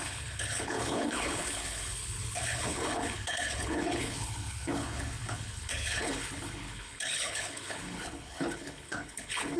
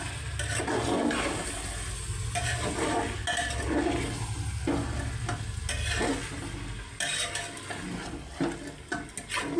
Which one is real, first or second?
second